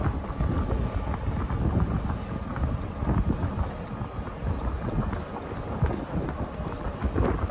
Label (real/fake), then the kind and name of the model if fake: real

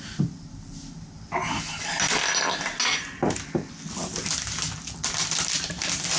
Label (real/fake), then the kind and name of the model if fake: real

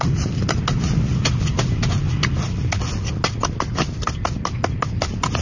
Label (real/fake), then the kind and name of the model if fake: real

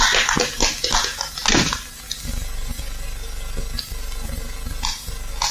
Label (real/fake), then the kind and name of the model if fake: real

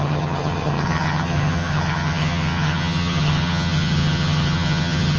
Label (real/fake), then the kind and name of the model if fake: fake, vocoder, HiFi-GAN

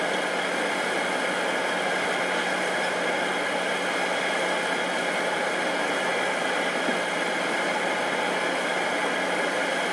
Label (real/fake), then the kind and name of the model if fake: real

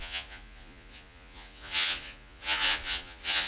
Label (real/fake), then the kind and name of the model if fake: fake, vocoder, Vocos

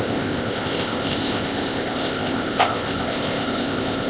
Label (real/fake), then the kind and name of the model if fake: fake, codec, ZipCodec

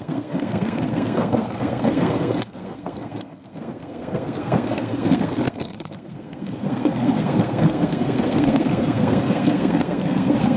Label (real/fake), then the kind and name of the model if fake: fake, codec, SNAC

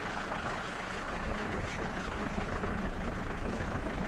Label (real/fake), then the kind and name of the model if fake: fake, codec, HILCodec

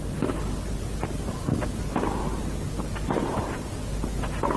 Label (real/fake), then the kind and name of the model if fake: real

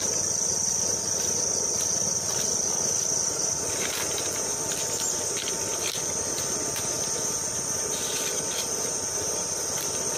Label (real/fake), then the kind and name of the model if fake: real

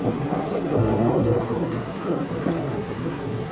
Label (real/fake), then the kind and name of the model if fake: fake, codec, SNAC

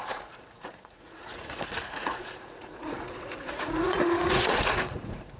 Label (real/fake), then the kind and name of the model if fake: fake, vocoder, Vocos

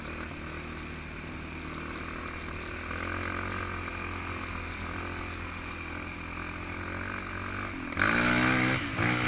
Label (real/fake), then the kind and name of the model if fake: real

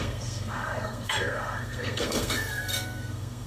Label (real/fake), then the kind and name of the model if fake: fake, codec, SNAC